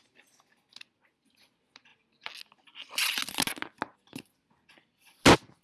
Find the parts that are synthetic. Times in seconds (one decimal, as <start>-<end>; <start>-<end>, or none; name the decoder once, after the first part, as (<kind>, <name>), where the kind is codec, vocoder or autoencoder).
none